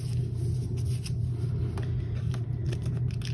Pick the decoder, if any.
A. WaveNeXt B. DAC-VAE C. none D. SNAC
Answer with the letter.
C